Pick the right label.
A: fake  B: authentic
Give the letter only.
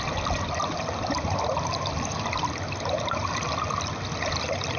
B